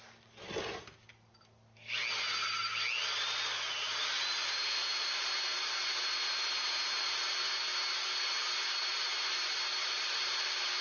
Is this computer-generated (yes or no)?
no